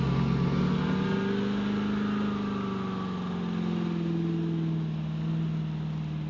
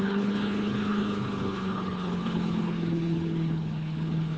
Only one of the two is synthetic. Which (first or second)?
second